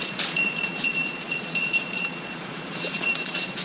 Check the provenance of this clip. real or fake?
fake